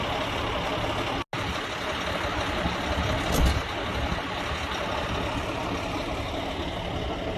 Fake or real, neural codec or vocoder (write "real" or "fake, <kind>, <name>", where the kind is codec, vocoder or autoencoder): real